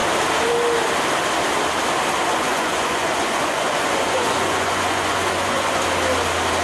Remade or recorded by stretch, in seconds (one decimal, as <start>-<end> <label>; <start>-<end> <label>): 0.0-2.3 recorded; 2.3-5.8 remade; 5.8-6.6 recorded